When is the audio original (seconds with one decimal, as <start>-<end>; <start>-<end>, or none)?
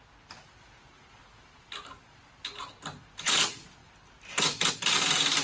0.0-5.4